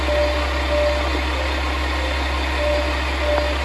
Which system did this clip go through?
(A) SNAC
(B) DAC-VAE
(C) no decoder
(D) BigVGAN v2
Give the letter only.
C